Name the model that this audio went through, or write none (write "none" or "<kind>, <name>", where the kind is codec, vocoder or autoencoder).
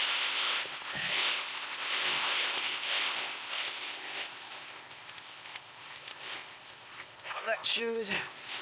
codec, ZipCodec